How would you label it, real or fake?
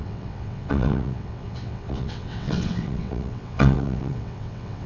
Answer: fake